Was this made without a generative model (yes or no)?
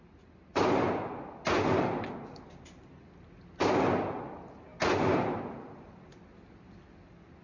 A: yes